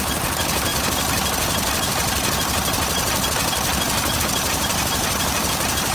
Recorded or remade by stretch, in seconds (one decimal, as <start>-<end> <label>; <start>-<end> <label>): 0.0-0.7 remade; 0.7-4.2 recorded; 4.2-5.9 remade